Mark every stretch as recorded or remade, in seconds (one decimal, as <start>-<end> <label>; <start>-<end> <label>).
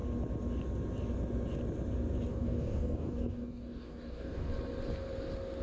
0.0-2.3 recorded; 2.3-4.5 remade; 4.5-5.6 recorded